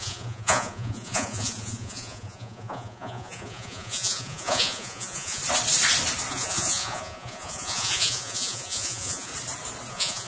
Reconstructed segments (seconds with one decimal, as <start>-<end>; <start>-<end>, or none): 0.0-5.4; 6.3-9.3; 9.9-10.3